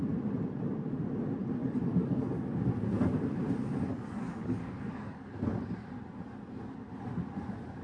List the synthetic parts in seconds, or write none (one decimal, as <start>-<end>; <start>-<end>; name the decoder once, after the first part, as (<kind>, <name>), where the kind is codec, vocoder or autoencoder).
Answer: 1.6-2.2 (codec, DAC); 3.9-5.3